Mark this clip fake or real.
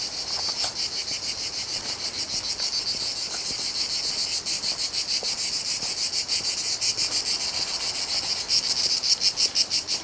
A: real